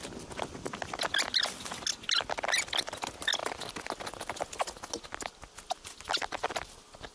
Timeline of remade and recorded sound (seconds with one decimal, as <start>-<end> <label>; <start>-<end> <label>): 0.0-7.1 recorded